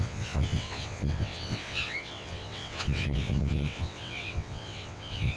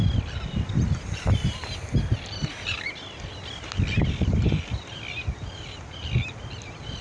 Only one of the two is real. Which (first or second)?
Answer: second